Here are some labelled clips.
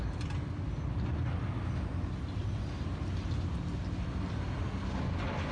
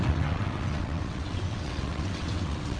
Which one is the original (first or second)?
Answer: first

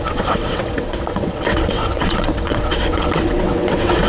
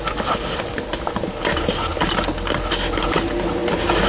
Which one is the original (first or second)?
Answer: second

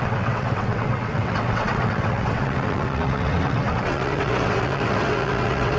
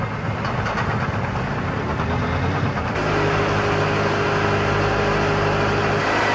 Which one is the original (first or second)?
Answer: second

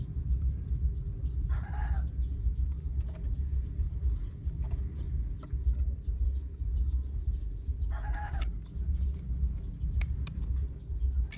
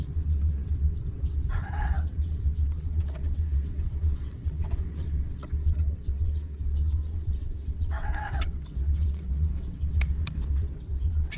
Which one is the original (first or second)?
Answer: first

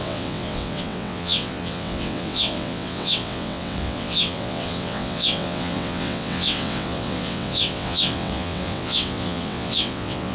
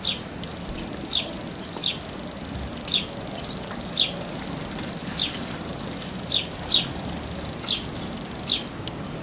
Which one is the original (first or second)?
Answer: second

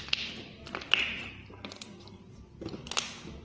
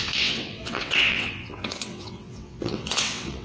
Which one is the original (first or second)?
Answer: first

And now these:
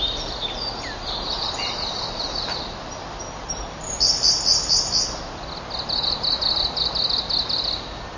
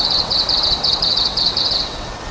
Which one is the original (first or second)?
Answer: first